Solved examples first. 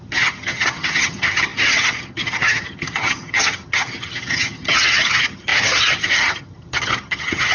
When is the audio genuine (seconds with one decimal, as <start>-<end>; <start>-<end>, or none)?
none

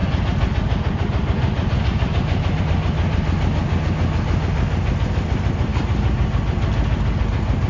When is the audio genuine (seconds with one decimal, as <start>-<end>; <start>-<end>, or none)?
0.0-7.7

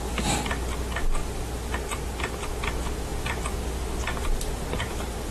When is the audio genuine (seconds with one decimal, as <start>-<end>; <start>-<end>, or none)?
0.0-1.2; 2.6-3.1

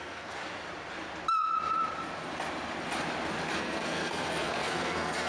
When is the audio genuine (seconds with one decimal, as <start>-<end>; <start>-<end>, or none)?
0.4-3.6

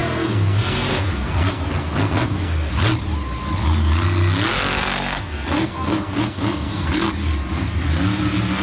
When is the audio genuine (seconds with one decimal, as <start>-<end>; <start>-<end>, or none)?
2.7-4.8; 7.1-8.6

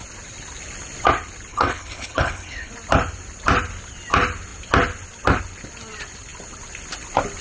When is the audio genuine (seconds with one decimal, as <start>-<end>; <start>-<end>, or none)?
0.0-1.5; 2.7-7.4

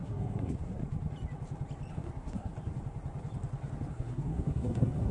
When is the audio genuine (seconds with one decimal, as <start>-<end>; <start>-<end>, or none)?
0.8-1.9; 2.5-3.9

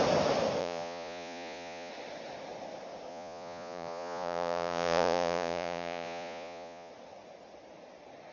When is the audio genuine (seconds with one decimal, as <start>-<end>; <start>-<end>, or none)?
0.0-0.6; 1.9-3.1; 6.9-8.3